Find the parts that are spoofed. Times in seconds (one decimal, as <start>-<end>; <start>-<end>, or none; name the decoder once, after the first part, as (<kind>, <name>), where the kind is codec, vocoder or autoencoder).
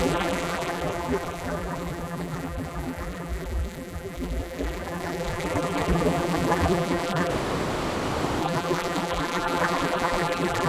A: 0.0-7.3 (vocoder, BigVGAN v2); 8.4-10.7